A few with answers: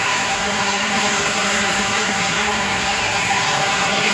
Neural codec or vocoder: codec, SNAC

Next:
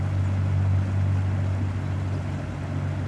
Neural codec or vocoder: none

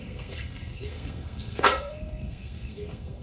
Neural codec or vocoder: codec, SNAC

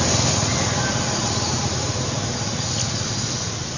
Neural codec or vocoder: none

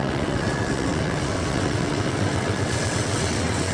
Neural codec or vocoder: vocoder, WaveNeXt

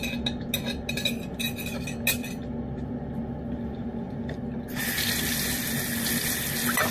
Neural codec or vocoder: none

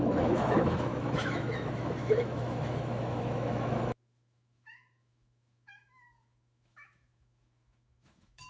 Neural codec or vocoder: autoencoder, DAC-VAE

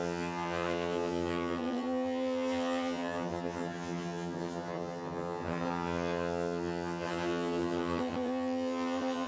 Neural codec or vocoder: vocoder, HiFi-GAN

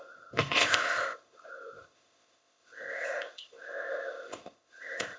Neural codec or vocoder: codec, ZipCodec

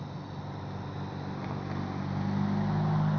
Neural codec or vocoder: none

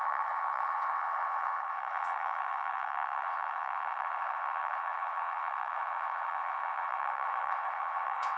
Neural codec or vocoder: vocoder, WaveNeXt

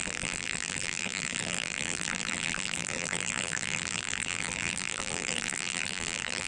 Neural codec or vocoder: vocoder, BigVGAN v2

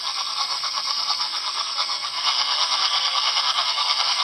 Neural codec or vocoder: codec, SNAC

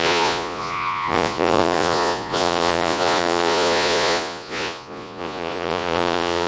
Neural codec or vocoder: vocoder, Vocos